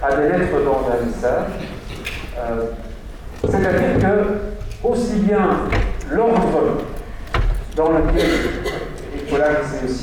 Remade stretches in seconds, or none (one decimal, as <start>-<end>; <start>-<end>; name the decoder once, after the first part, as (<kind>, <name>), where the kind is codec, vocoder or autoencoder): none

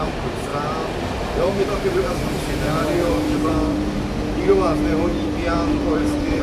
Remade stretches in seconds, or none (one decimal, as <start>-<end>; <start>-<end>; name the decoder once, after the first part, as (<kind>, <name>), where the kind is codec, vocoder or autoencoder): 0.5-4.2 (vocoder, BigVGAN v2); 5.1-6.4

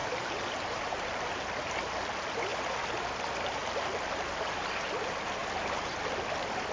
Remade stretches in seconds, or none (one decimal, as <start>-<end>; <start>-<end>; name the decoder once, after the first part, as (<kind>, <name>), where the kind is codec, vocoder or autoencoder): 0.0-1.3 (vocoder, BigVGAN v2)